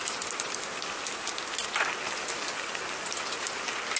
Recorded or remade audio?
recorded